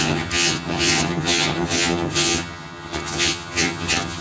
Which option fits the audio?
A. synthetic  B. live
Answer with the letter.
A